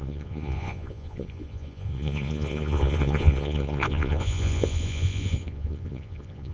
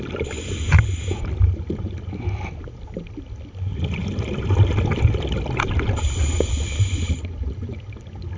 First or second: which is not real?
first